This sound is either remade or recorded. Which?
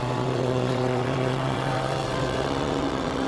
remade